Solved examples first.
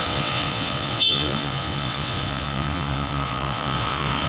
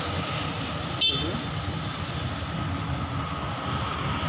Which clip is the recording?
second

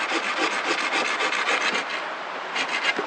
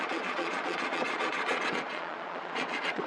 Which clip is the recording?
first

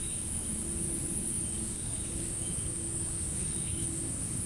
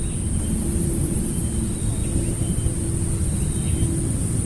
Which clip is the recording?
second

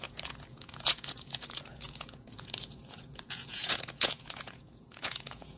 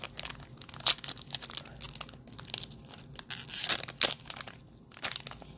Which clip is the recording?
second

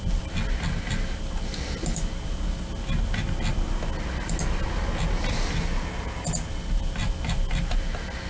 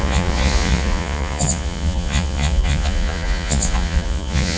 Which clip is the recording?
first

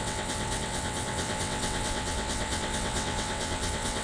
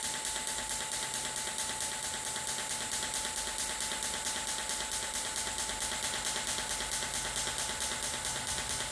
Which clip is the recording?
second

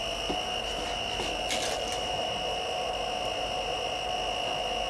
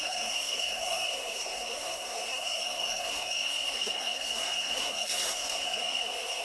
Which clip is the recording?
first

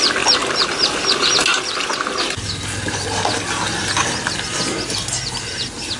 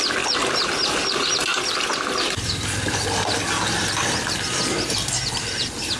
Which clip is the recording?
first